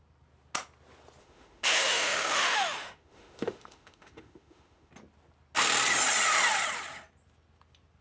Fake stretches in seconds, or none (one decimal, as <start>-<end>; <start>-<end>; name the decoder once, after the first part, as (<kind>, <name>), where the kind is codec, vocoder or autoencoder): 1.2-4.9 (autoencoder, DAC-VAE)